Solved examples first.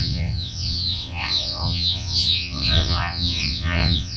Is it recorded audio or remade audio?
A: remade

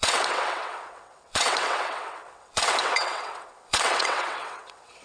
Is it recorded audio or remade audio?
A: remade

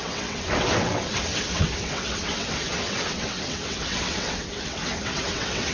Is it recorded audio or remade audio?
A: remade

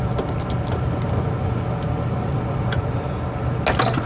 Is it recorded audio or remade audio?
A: recorded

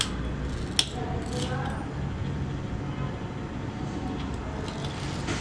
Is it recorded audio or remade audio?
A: recorded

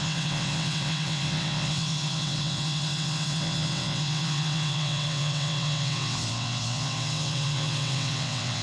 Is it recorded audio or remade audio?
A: remade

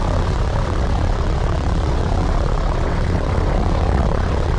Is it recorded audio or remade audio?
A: remade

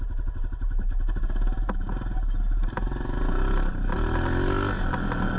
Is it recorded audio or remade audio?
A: recorded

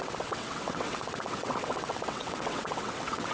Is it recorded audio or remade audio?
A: remade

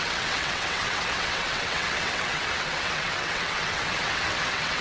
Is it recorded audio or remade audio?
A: remade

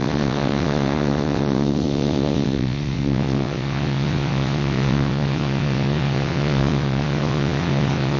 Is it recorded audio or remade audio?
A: remade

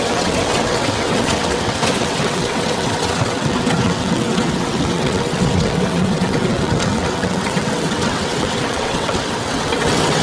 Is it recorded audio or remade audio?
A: remade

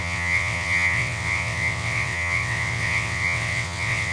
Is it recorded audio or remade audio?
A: remade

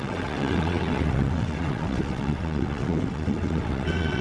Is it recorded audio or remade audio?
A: remade